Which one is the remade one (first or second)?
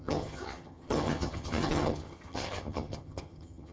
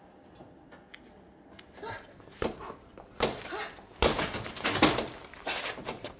first